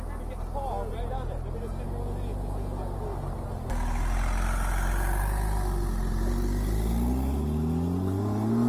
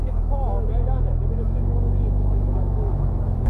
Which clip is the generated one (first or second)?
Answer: second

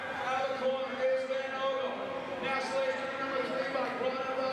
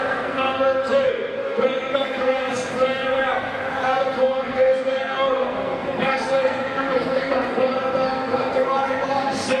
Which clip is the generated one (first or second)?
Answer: second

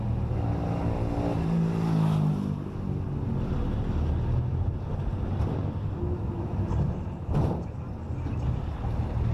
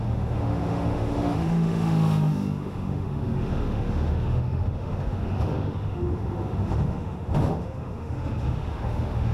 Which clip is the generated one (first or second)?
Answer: second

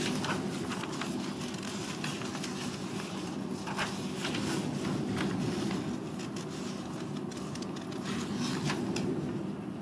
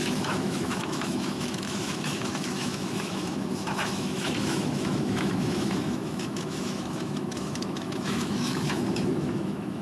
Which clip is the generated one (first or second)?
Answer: second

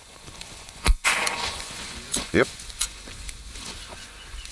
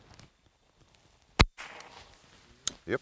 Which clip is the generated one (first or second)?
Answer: first